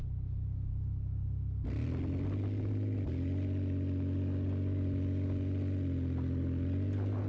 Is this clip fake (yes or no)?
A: no